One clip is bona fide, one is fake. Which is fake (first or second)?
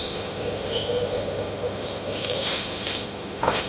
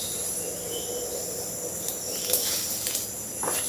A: first